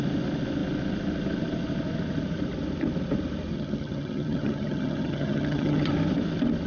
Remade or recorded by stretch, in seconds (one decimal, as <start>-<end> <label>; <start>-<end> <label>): 0.0-3.5 recorded; 3.5-5.9 remade; 5.9-6.7 recorded